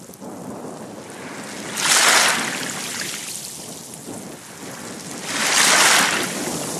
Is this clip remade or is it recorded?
recorded